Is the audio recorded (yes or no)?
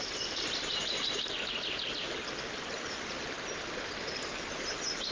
yes